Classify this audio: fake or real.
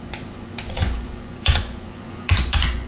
fake